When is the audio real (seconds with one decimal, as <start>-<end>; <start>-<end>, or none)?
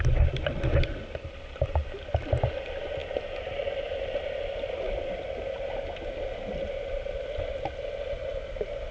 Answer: 0.0-8.9